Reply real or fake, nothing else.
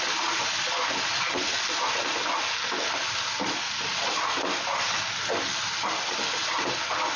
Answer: real